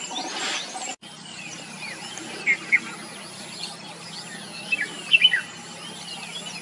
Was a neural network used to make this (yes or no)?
no